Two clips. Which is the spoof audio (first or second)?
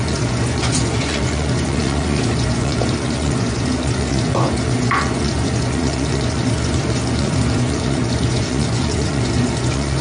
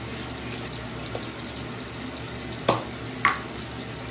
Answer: first